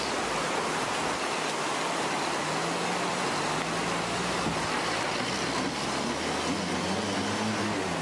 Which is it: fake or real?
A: real